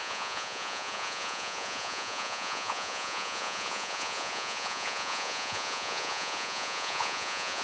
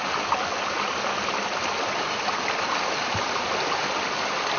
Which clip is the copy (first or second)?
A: first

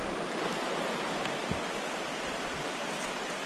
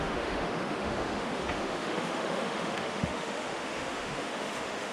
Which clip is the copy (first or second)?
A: second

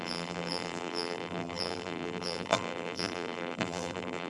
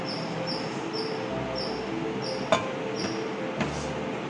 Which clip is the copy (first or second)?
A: first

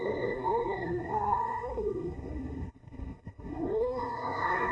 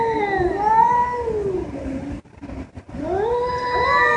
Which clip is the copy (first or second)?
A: first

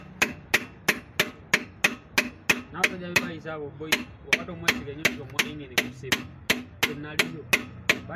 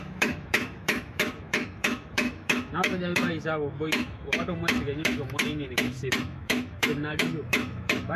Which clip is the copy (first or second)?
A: second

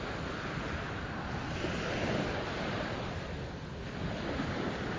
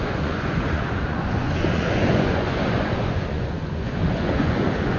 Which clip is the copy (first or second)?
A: second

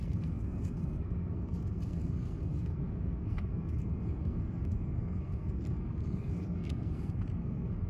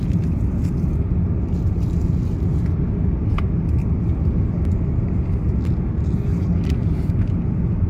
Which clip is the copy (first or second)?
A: first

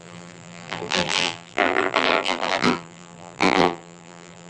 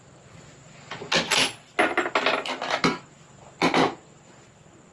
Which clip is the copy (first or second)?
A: first